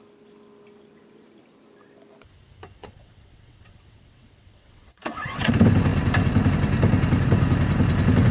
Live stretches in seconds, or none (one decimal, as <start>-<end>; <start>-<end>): 0.0-2.8; 5.5-8.3